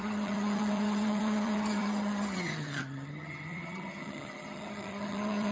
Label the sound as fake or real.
fake